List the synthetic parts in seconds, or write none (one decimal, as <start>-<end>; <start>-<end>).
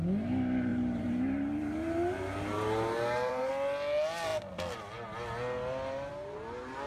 0.7-3.5